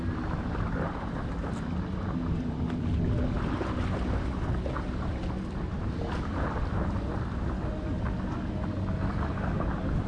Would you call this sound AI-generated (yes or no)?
no